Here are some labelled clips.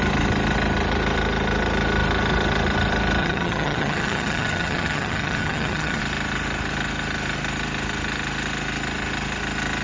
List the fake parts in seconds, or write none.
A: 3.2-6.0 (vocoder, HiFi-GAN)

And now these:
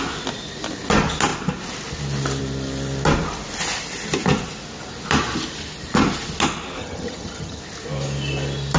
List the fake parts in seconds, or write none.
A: 6.8-7.6 (vocoder, HiFi-GAN)

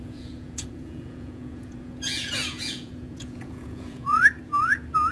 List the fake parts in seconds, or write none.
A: 0.0-4.2 (vocoder, Vocos)

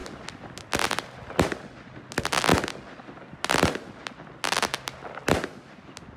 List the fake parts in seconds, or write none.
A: none

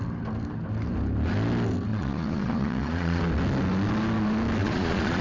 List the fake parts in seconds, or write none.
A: 1.9-3.2 (vocoder, Vocos); 4.6-5.2

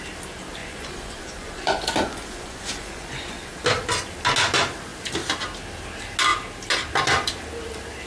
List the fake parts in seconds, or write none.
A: 0.6-3.5 (vocoder, Vocos)

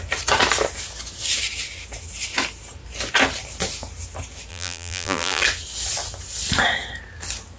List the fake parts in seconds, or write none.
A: 4.5-5.4 (vocoder, BigVGAN v2)

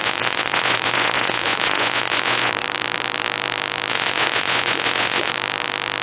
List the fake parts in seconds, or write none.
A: 0.0-2.5 (vocoder, Vocos); 3.9-5.3